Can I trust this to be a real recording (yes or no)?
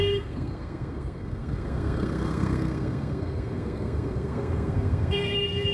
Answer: no